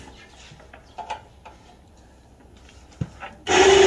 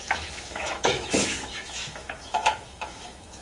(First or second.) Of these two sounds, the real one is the first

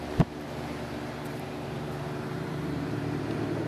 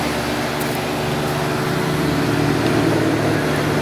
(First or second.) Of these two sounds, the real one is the second